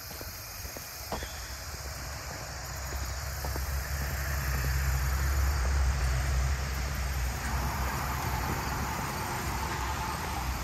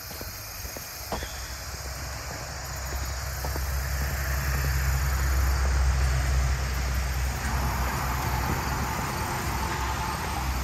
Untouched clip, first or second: second